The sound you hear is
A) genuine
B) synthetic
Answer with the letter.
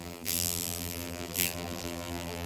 B